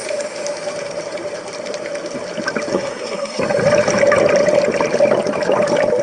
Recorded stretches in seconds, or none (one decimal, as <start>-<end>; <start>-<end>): 0.0-2.7; 3.4-6.0